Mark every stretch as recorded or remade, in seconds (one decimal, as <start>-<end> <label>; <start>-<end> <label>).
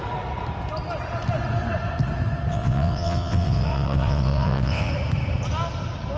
0.0-2.5 recorded; 2.5-4.9 remade; 4.9-6.2 recorded